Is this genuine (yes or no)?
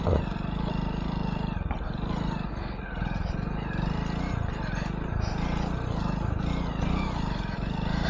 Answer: yes